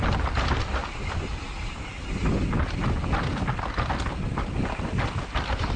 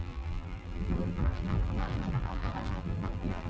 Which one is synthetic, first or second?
second